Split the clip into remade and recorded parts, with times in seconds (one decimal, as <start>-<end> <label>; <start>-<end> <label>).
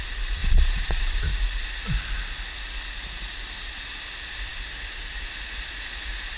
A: 0.0-0.4 recorded; 0.4-1.2 remade; 1.2-6.4 recorded